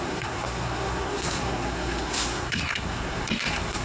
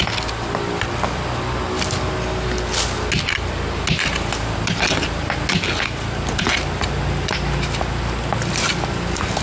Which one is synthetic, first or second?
first